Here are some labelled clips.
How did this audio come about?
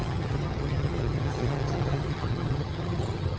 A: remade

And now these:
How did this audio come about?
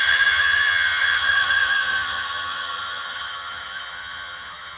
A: remade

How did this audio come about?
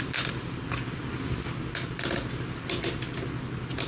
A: recorded